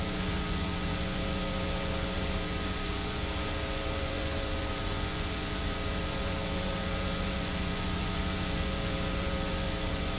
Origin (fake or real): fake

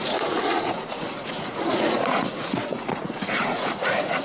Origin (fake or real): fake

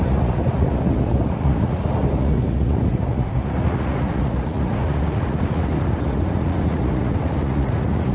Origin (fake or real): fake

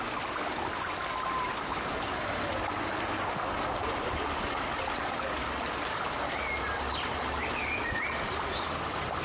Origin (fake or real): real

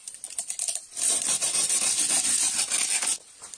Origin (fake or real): real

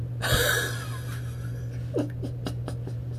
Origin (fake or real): real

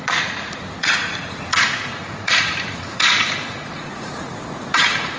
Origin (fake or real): fake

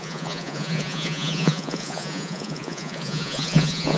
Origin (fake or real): fake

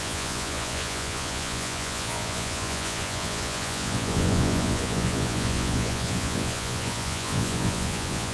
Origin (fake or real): fake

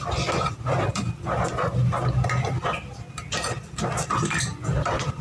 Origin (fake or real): real